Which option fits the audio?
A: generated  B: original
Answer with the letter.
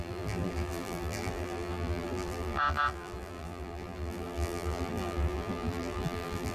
A